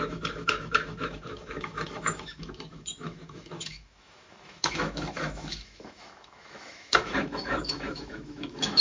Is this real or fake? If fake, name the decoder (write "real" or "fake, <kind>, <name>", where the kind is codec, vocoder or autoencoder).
fake, autoencoder, DAC-VAE